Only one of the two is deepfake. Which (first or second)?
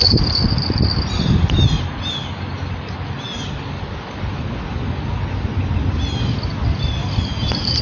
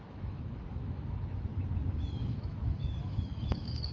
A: second